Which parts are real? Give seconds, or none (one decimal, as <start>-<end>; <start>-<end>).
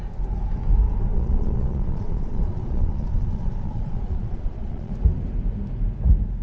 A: 0.0-1.1; 4.9-6.4